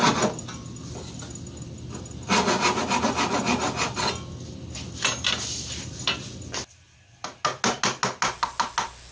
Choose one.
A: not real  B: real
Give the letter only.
B